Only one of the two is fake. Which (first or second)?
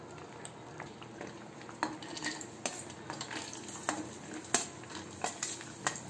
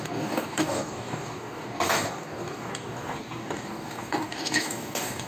second